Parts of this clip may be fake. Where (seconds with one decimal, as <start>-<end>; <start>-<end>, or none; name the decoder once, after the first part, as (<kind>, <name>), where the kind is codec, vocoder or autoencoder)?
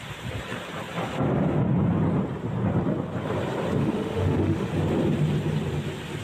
3.8-4.7 (autoencoder, DAC-VAE)